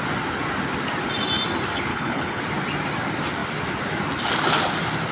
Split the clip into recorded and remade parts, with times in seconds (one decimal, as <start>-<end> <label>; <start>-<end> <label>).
0.0-1.9 recorded; 1.9-2.4 remade; 2.4-5.1 recorded